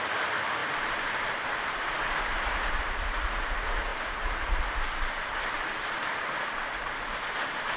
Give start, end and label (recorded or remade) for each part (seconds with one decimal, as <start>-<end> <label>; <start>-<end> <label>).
0.0-7.8 recorded